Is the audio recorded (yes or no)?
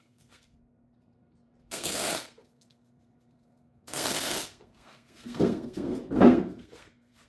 no